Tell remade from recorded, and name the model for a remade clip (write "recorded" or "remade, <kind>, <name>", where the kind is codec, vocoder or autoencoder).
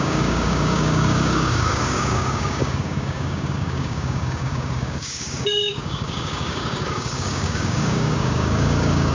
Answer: remade, codec, DAC